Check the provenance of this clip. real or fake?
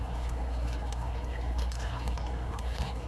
fake